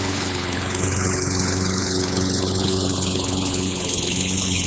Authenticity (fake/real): fake